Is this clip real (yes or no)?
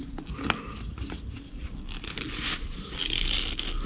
yes